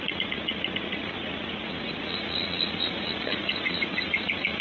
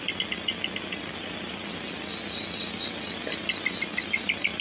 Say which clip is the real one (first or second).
second